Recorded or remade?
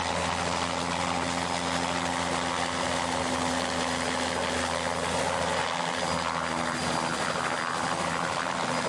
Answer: recorded